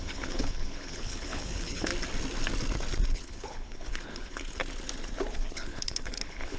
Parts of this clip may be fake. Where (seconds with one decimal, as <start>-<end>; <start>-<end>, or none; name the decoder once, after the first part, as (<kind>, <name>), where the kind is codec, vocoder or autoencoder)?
0.0-1.9 (codec, HILCodec); 3.1-4.6; 5.3-6.6